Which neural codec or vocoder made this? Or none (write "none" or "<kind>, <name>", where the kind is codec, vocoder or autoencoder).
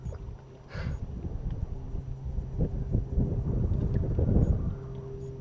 none